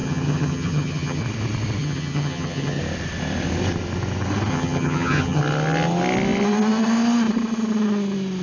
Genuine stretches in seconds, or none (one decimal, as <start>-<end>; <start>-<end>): 1.2-1.8; 2.8-4.5; 5.4-8.4